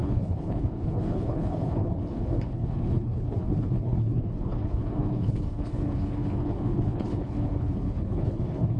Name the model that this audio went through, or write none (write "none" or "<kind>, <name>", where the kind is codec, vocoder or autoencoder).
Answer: codec, HILCodec